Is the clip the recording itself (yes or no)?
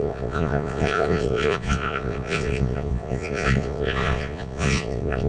no